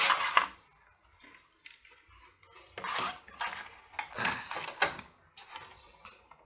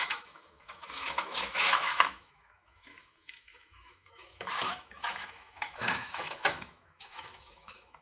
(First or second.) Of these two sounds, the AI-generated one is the second